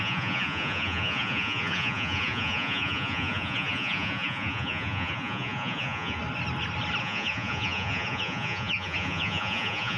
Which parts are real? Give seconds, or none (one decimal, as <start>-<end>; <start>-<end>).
6.2-7.0

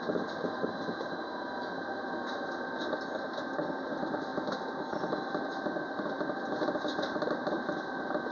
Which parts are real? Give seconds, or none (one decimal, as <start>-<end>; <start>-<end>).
0.0-8.3

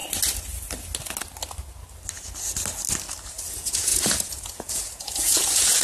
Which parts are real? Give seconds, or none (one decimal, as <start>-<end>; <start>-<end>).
0.0-3.5

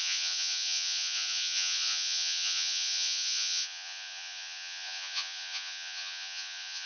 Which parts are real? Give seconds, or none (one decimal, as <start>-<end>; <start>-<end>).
none

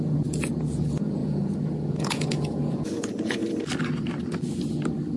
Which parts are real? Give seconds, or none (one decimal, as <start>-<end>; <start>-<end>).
3.4-5.2